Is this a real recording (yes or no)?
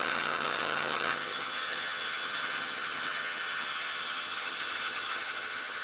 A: no